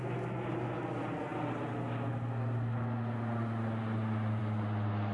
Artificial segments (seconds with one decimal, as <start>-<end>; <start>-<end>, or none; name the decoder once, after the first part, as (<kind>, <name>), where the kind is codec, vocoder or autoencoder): none